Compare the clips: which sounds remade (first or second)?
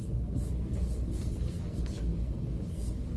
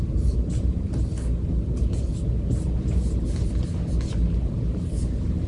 first